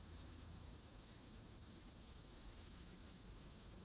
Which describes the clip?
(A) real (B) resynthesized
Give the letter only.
B